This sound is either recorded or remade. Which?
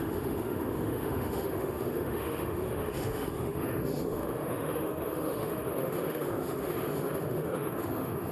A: remade